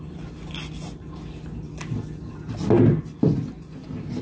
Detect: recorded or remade recorded